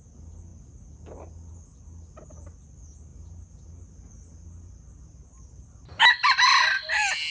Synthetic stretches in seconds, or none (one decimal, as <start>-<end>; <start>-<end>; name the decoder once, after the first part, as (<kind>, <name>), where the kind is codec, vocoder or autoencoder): none